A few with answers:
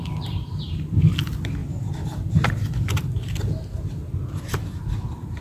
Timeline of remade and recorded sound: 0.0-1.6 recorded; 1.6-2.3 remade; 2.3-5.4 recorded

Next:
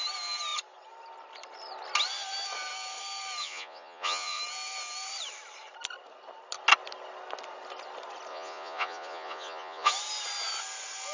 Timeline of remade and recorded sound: 0.0-3.4 recorded; 3.4-4.4 remade; 4.4-8.3 recorded; 8.3-9.9 remade; 9.9-11.1 recorded

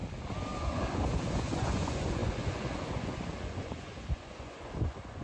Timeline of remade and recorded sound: 0.0-0.6 recorded; 0.6-5.2 remade

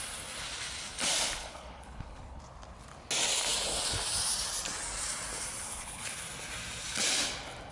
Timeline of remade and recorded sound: 0.0-1.4 recorded; 1.4-2.4 remade; 2.4-5.6 recorded; 5.6-6.2 remade; 6.2-7.7 recorded

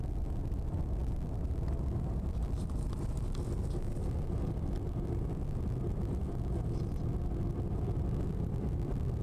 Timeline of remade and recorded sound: 0.0-9.2 recorded

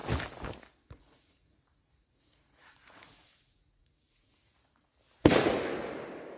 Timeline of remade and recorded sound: 0.0-1.0 recorded; 1.0-4.9 remade; 4.9-6.4 recorded

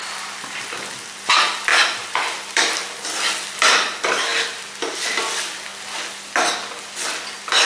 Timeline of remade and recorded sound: 0.0-1.7 recorded; 1.7-3.0 remade; 3.0-7.6 recorded